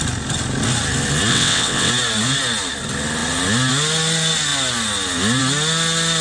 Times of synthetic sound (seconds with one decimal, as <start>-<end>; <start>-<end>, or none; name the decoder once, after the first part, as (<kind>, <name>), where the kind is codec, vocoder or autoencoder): 1.3-1.9 (vocoder, WaveNeXt)